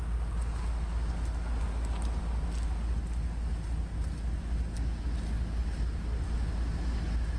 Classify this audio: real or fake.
real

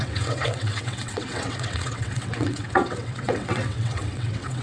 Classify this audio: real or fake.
fake